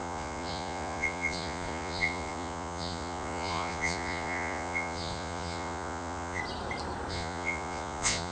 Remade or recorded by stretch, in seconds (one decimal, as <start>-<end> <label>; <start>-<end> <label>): 0.0-6.4 remade; 6.4-7.1 recorded; 7.1-8.3 remade